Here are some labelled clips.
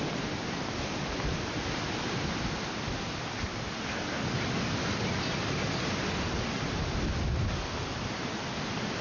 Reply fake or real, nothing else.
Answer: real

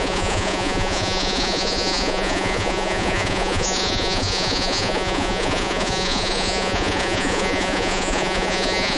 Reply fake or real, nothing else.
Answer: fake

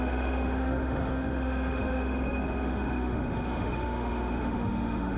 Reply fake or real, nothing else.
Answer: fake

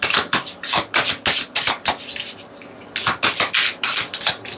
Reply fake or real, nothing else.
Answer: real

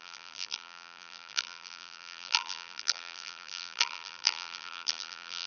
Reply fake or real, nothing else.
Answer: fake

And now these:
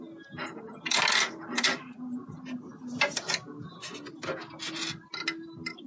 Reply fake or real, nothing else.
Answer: real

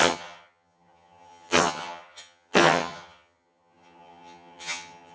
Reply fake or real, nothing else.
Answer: fake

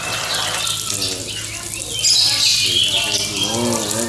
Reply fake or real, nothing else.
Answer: real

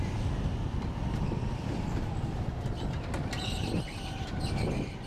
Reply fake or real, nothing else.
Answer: real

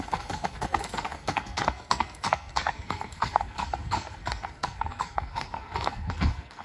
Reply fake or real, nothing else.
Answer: fake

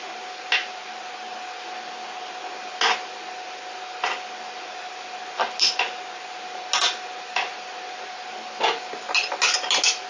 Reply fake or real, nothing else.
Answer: real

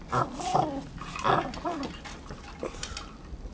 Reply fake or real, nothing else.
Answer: real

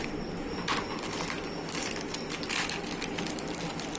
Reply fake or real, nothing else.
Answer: real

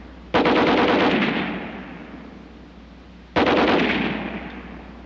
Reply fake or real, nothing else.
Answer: real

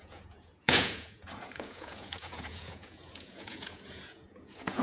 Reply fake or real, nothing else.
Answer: fake